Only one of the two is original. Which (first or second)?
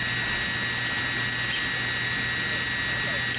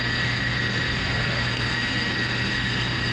first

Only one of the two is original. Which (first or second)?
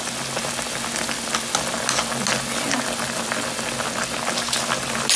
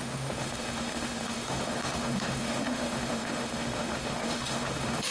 first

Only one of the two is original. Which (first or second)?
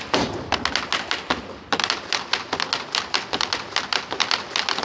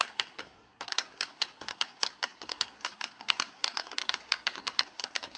first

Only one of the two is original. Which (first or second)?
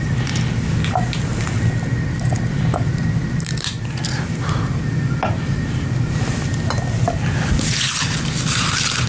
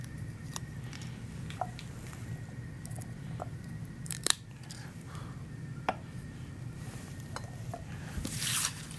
first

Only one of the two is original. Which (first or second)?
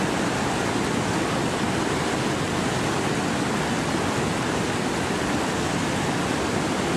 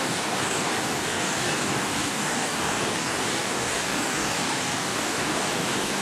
first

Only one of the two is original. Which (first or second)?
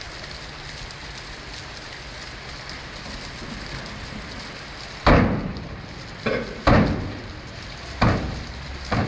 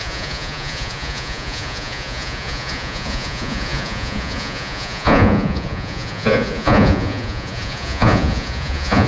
first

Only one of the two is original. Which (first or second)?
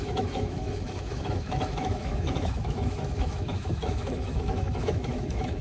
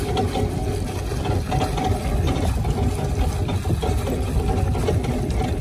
second